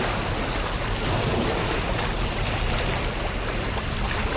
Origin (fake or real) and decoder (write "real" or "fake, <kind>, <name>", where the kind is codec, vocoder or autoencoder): real